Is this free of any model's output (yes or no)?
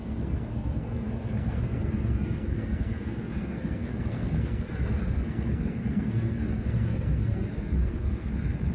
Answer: no